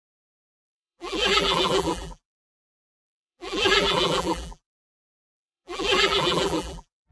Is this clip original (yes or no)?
no